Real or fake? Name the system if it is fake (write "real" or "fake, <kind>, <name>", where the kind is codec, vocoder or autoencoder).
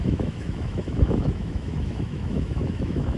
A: fake, autoencoder, DAC-VAE